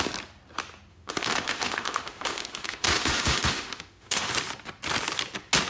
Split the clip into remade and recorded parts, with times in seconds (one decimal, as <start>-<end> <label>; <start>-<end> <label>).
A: 0.0-0.9 recorded; 0.9-4.3 remade; 4.3-5.7 recorded